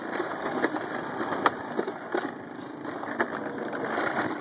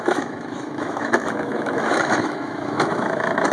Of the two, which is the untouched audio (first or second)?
first